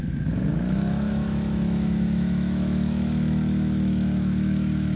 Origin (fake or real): fake